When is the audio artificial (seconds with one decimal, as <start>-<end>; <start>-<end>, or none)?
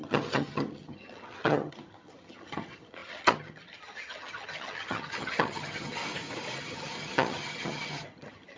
0.0-6.0; 6.6-8.6